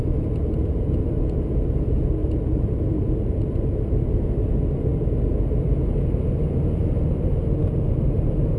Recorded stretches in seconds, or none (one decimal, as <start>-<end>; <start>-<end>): 0.0-8.6